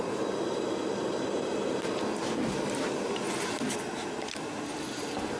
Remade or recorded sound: recorded